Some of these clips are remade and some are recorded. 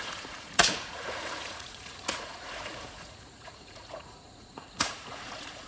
remade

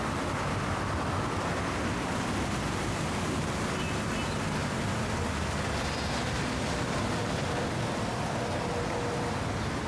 recorded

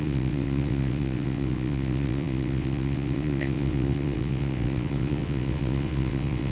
remade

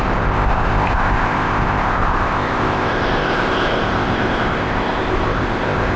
remade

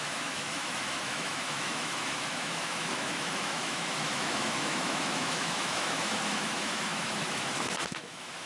remade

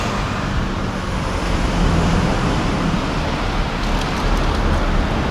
recorded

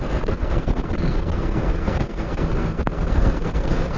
remade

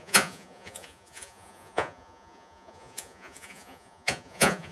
remade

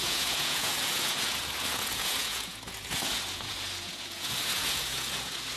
remade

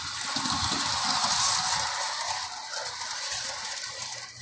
recorded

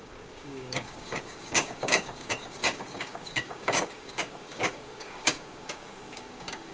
remade